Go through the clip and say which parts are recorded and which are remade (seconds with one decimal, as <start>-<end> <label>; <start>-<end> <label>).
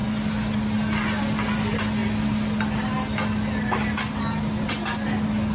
0.0-5.5 recorded